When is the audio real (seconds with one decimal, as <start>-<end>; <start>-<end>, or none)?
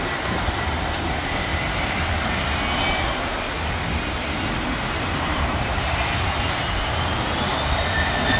0.0-1.5; 2.5-5.3; 7.0-8.4